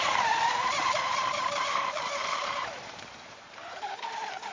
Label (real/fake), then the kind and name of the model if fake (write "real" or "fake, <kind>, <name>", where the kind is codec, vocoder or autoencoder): fake, vocoder, BigVGAN v2